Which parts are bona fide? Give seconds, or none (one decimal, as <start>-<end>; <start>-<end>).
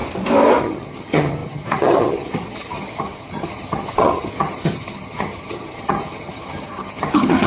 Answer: 0.0-0.6